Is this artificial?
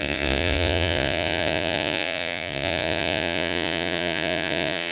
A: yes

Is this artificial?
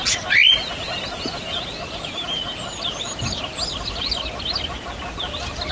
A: no